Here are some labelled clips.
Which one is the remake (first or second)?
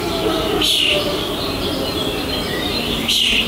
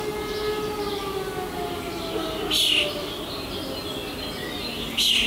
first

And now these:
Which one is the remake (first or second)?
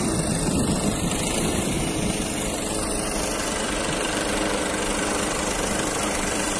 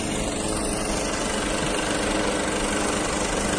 first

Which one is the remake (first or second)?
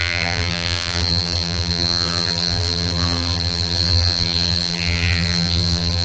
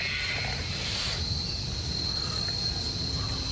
first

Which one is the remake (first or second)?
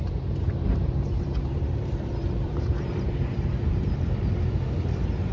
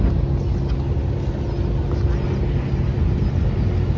first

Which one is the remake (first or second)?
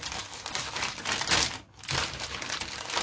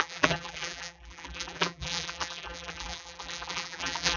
second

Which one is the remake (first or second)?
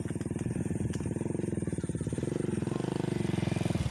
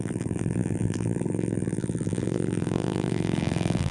second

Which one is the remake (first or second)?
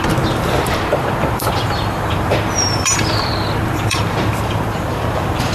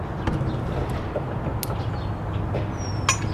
first